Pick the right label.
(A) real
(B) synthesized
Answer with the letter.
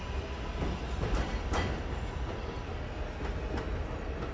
A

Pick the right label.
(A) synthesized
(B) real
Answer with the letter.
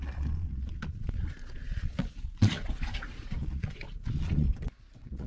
A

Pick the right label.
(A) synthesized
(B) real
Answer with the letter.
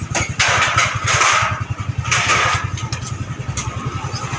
B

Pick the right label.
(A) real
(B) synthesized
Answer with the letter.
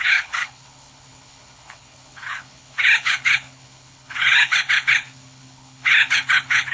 B